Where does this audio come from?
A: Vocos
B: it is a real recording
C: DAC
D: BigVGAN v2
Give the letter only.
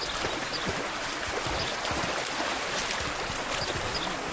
B